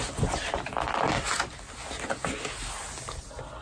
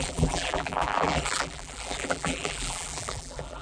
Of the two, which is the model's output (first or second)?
second